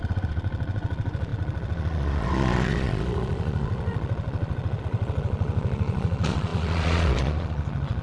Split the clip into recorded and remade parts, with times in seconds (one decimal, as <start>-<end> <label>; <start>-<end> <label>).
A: 0.0-8.0 remade